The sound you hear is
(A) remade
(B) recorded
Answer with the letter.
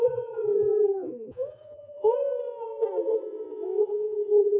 A